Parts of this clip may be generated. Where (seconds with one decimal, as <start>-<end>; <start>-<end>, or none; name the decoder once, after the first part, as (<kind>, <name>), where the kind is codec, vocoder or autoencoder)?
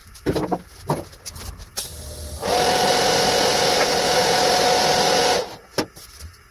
none